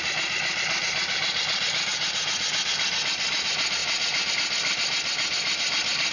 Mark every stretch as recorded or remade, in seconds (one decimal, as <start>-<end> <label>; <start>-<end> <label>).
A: 0.0-6.1 recorded